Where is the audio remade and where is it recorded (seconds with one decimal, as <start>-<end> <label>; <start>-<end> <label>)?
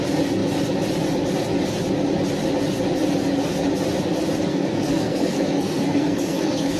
0.0-4.5 recorded; 4.5-6.8 remade